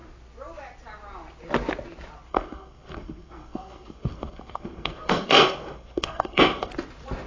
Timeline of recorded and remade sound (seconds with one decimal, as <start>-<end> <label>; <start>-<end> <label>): 0.0-2.3 recorded; 2.3-6.7 remade; 6.7-7.3 recorded